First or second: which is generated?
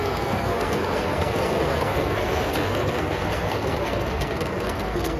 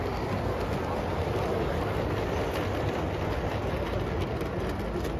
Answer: first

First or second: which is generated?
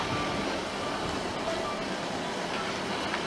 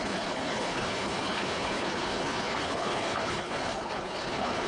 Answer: second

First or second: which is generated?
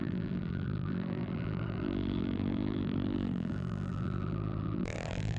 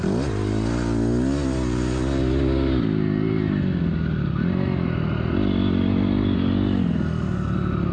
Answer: first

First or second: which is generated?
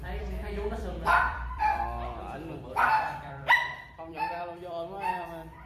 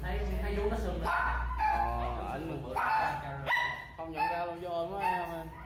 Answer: first